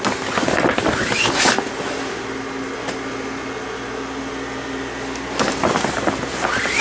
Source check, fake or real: real